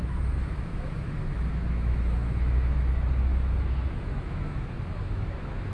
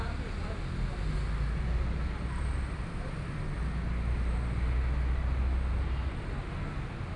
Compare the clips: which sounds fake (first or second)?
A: first